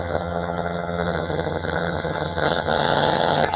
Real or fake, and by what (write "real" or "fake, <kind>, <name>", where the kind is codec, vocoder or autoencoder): fake, vocoder, HiFi-GAN